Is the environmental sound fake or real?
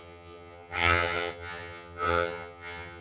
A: fake